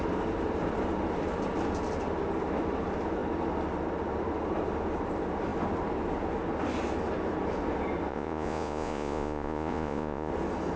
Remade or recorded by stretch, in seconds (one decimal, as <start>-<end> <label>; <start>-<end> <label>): 0.0-8.1 recorded; 8.1-10.3 remade; 10.3-10.8 recorded